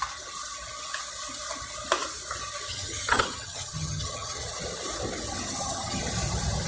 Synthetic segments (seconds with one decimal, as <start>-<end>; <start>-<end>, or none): 2.7-4.4; 5.3-6.0